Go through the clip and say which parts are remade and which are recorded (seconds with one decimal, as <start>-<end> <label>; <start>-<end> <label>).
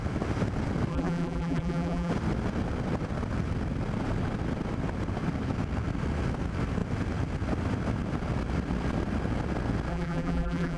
0.0-0.9 recorded; 0.9-2.1 remade; 2.1-9.9 recorded; 9.9-10.8 remade